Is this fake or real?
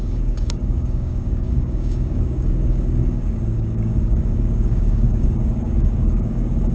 fake